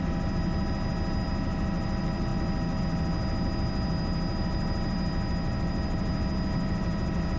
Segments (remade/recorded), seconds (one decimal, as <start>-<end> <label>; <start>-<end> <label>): 0.0-7.4 recorded